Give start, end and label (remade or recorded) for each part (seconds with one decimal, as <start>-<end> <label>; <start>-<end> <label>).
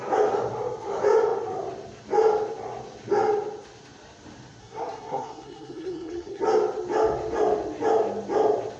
0.0-4.6 recorded; 4.6-6.4 remade; 6.4-8.8 recorded